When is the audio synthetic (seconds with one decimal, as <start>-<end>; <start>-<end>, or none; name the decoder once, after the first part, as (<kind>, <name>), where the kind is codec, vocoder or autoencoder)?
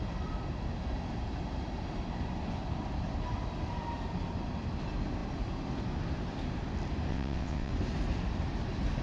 7.1-7.7 (vocoder, WaveNeXt)